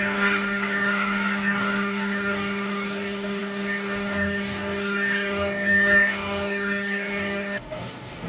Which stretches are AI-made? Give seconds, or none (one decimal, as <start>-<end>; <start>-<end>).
0.0-8.3